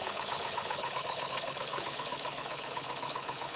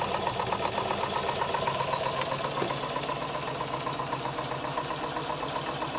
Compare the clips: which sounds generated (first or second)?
first